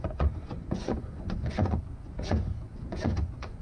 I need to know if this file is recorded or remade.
remade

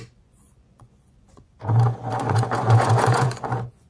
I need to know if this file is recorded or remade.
remade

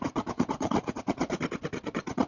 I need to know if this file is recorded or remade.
remade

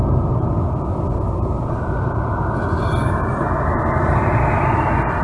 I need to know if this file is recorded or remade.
recorded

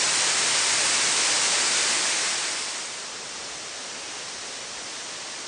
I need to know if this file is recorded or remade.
recorded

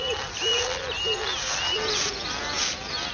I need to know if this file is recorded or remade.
recorded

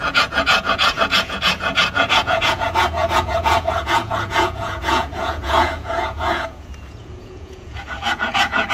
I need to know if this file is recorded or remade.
remade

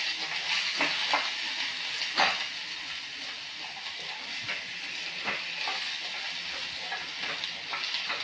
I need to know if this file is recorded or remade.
recorded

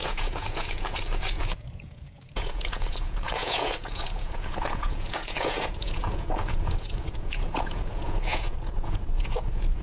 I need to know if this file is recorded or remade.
remade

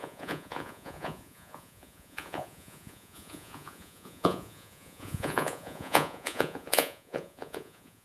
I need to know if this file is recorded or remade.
remade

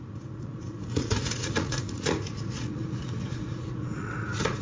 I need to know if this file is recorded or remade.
remade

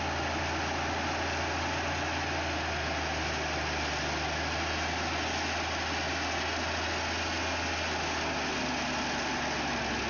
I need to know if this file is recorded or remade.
recorded